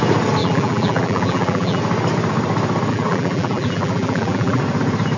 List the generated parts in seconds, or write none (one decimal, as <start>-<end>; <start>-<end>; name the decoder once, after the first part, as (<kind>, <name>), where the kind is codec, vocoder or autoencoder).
0.4-1.8 (vocoder, BigVGAN v2); 2.9-4.6